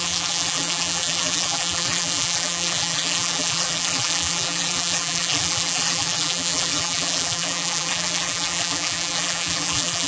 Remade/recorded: remade